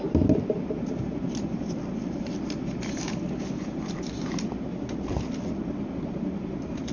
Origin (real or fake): real